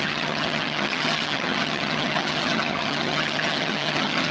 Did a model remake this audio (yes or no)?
yes